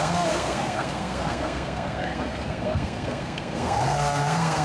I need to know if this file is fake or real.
fake